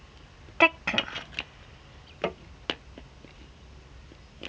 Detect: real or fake real